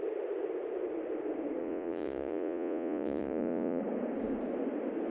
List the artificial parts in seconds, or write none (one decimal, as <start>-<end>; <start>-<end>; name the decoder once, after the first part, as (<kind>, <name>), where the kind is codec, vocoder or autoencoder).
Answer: 1.6-3.8 (vocoder, Vocos)